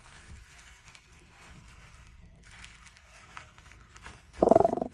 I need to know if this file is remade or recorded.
remade